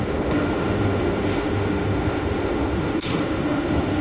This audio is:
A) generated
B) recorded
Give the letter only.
A